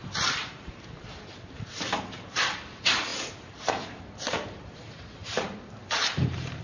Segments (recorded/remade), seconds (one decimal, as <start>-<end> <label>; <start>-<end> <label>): 0.0-6.6 remade